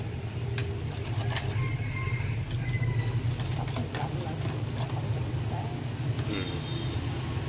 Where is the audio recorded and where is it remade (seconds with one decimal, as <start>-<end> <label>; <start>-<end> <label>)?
0.0-7.5 recorded